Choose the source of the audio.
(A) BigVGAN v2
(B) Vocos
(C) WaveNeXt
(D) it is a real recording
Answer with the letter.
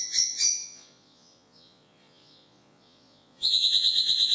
B